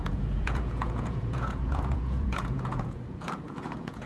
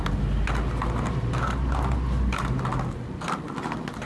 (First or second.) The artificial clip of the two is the first